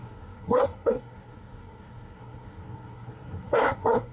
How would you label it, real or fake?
fake